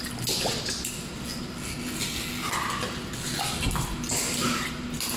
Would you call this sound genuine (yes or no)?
yes